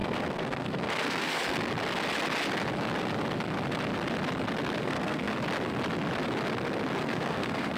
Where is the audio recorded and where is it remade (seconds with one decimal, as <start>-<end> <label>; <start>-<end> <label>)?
0.0-1.6 remade; 1.6-4.8 recorded; 4.8-5.3 remade; 5.3-7.0 recorded; 7.0-7.8 remade